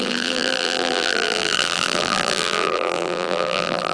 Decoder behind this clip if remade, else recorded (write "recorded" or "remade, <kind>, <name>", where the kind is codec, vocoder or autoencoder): remade, vocoder, BigVGAN v2